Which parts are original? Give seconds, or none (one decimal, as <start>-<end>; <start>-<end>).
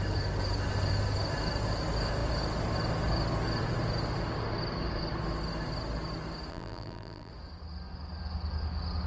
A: 0.0-6.5; 7.3-9.1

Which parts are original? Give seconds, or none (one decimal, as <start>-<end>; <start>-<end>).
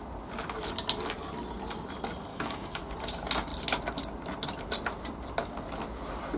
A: 0.0-2.3; 2.8-6.4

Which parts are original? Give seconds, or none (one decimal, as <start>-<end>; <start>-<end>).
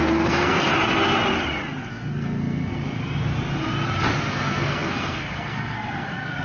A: 0.7-1.9; 3.0-4.3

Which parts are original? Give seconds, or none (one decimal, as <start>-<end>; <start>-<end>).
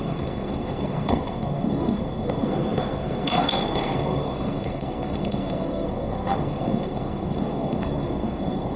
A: none